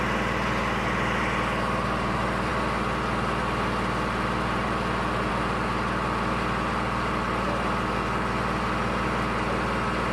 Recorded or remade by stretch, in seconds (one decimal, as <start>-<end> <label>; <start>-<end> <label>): 0.0-10.1 recorded